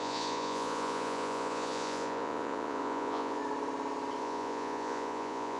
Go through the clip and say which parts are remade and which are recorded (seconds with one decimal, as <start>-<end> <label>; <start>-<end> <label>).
0.0-3.4 remade; 3.4-4.2 recorded; 4.2-5.6 remade